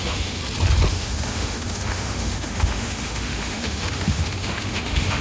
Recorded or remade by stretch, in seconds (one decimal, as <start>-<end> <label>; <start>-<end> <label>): 0.0-0.4 remade; 0.4-0.9 recorded; 0.9-5.2 remade